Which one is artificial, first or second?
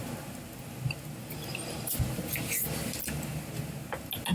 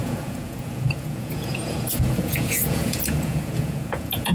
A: second